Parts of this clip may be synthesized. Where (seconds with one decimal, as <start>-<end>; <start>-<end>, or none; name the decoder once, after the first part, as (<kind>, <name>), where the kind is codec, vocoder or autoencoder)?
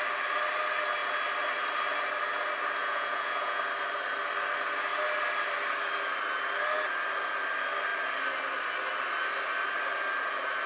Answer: 2.8-3.6 (vocoder, Vocos)